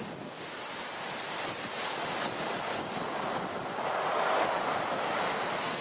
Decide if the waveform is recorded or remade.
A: recorded